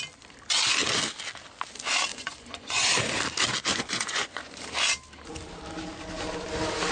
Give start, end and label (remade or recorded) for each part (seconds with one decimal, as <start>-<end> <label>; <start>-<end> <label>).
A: 0.0-2.1 recorded; 2.1-2.9 remade; 2.9-3.7 recorded; 3.7-4.6 remade; 4.6-6.9 recorded